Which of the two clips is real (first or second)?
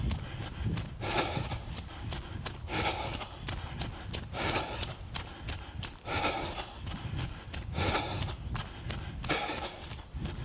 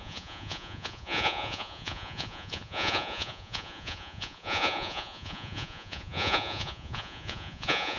first